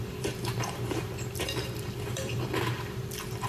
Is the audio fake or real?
fake